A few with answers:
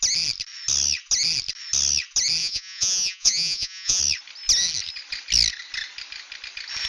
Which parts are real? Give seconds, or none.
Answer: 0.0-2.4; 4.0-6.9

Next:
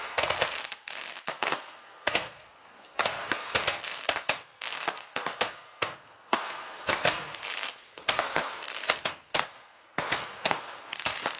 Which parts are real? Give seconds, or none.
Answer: none

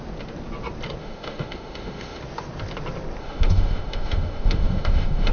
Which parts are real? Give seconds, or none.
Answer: 0.0-1.0; 2.2-3.2

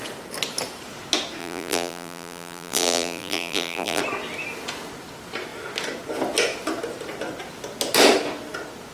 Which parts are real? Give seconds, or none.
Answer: 0.0-1.4; 4.0-8.9

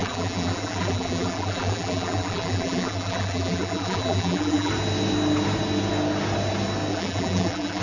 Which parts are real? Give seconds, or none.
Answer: 4.7-6.9

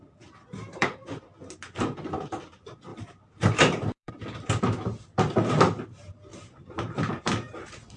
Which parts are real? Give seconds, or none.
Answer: 0.0-0.6; 1.3-2.9; 4.6-6.3; 7.3-8.0

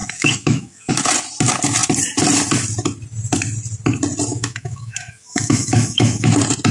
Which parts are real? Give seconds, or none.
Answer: 0.9-4.3; 6.3-6.7

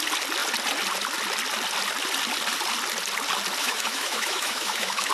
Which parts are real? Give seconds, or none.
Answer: 0.0-3.6